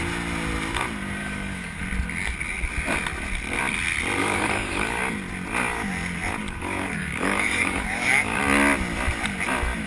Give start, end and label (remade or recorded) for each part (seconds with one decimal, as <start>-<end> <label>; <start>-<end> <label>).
0.0-1.2 recorded; 1.2-1.8 remade; 1.8-4.2 recorded; 4.2-5.0 remade; 5.0-6.4 recorded; 6.4-8.4 remade; 8.4-9.9 recorded